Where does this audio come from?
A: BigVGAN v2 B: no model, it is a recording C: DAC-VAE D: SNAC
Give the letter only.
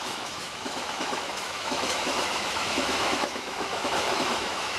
C